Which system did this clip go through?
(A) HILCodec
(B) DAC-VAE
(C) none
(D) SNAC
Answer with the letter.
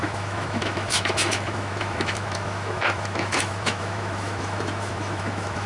B